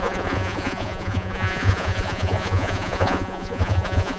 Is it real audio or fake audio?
fake